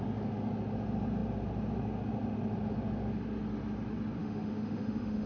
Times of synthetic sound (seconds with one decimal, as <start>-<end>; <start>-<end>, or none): 4.2-5.3